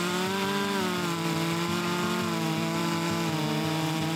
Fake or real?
fake